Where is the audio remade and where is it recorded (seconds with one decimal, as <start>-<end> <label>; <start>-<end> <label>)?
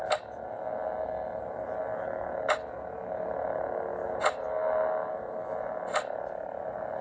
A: 0.0-7.0 recorded